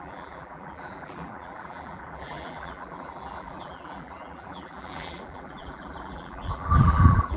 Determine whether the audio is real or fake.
fake